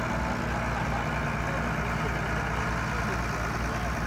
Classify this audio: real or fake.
real